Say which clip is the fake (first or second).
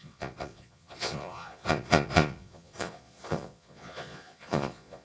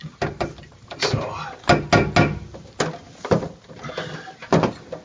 first